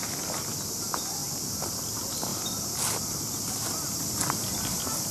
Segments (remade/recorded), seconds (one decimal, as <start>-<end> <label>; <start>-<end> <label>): 0.0-5.1 recorded